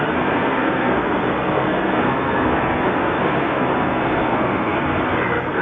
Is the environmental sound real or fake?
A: fake